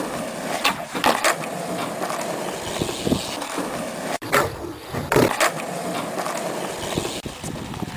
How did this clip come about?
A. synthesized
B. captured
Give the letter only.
B